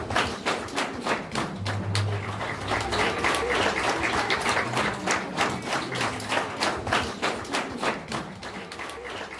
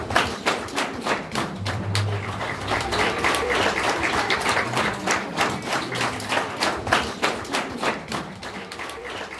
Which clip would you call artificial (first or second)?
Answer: second